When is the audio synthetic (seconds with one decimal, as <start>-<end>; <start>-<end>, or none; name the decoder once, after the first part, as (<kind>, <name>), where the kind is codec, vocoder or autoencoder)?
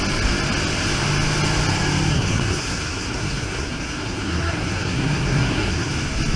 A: 2.1-5.9 (codec, SNAC)